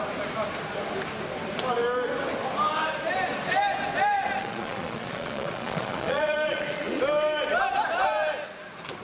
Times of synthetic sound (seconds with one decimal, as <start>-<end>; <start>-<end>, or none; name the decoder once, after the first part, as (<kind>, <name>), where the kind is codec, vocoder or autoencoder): 4.4-7.0 (vocoder, Vocos)